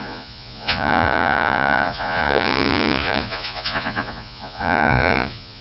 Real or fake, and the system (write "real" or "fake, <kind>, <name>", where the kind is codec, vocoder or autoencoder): fake, vocoder, Vocos